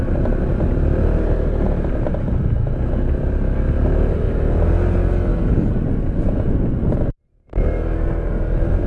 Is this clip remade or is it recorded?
recorded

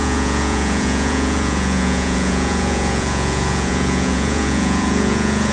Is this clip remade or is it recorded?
remade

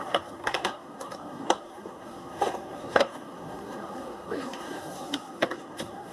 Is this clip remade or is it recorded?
remade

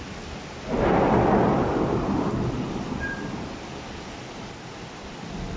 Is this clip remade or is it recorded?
recorded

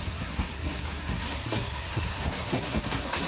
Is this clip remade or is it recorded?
remade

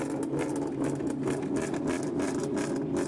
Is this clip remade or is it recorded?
recorded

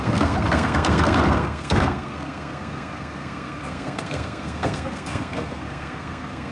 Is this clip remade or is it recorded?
remade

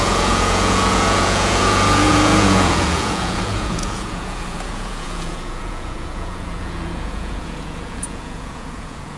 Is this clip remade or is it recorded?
remade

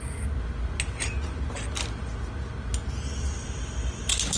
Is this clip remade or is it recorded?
recorded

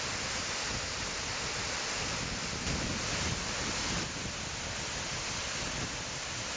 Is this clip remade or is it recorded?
recorded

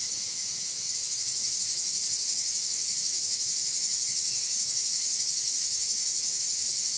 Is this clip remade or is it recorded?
remade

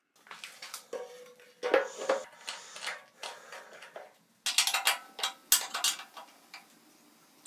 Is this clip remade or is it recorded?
recorded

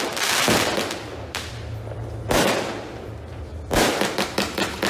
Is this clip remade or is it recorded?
remade